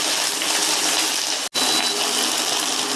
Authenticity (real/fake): real